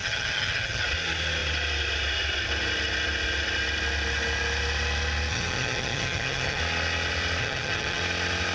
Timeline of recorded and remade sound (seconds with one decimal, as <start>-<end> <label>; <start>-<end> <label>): 0.0-0.8 remade; 0.8-5.3 recorded; 5.3-6.6 remade; 6.6-7.4 recorded; 7.4-8.0 remade; 8.0-8.5 recorded